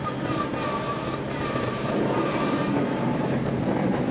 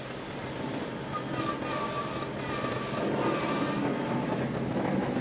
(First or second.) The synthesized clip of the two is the first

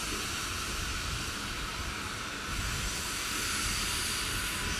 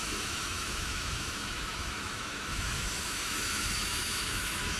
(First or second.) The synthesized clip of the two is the second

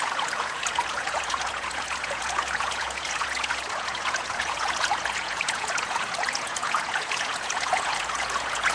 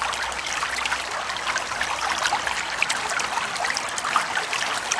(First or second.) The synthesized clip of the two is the first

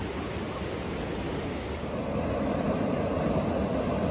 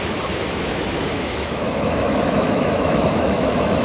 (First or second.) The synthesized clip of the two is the second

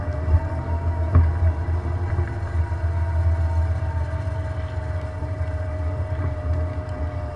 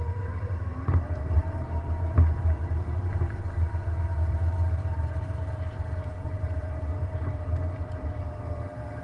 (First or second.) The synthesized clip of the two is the second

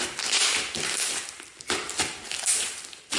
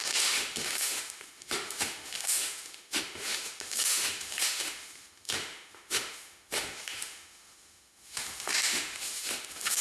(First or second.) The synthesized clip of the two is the second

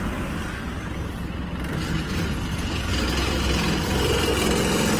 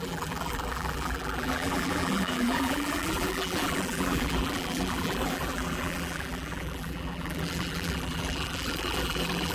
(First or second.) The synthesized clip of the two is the second